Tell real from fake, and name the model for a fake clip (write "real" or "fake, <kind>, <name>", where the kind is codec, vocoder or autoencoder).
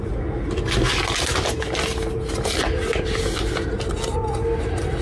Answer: real